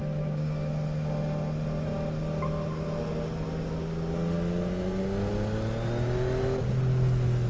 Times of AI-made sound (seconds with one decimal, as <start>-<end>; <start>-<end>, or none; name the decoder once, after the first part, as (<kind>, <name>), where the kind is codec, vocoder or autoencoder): 0.0-0.7 (codec, DAC)